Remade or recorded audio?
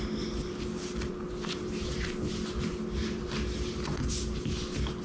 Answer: recorded